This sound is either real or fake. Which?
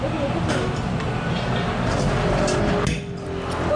real